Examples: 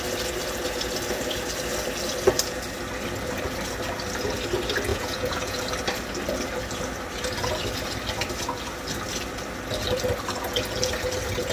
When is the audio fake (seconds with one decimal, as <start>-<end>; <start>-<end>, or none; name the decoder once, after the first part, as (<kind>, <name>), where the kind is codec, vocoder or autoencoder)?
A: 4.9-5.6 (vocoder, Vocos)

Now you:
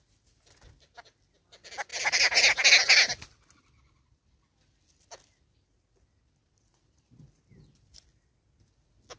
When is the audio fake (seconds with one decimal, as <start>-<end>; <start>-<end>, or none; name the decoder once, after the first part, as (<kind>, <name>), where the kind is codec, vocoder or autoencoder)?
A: none

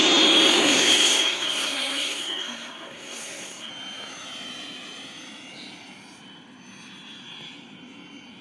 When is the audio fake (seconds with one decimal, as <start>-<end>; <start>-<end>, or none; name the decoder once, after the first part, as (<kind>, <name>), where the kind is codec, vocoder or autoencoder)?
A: 0.5-3.7 (codec, SNAC)